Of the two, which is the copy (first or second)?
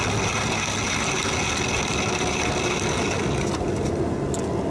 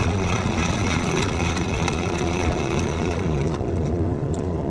second